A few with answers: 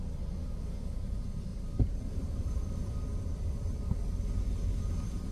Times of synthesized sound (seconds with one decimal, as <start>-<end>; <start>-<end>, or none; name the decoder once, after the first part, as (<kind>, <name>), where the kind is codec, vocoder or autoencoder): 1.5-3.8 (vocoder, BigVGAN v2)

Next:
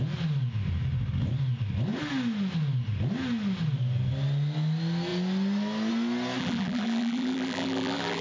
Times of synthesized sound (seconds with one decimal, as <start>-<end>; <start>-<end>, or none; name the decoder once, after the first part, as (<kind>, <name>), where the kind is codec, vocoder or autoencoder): 6.4-8.2 (vocoder, BigVGAN v2)

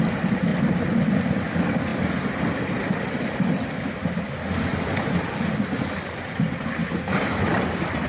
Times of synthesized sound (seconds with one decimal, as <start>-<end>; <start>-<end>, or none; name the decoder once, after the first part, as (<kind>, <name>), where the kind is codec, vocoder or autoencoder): 0.0-1.9 (vocoder, BigVGAN v2); 5.2-8.1

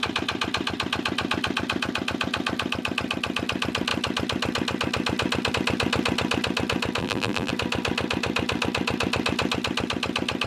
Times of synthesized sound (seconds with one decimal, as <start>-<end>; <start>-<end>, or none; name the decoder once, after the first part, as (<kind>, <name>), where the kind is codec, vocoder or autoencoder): 7.0-7.5 (vocoder, BigVGAN v2)

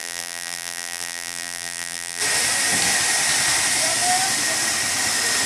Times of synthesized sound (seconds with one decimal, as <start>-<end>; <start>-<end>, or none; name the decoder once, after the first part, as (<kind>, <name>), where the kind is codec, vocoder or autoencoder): 0.0-2.2 (vocoder, BigVGAN v2)

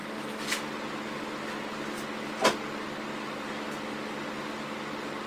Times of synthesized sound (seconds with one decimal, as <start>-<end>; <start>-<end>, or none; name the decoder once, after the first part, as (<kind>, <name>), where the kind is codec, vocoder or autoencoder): none

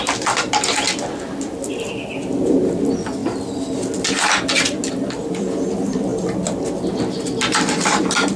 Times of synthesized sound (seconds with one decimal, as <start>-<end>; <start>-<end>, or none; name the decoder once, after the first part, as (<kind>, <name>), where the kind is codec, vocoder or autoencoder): 0.0-3.2 (vocoder, BigVGAN v2); 4.9-6.1; 7.7-8.4

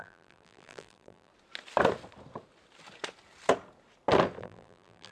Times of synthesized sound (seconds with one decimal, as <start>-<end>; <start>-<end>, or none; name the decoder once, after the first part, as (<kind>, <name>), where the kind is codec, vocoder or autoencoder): 0.0-1.3 (vocoder, BigVGAN v2); 4.4-5.1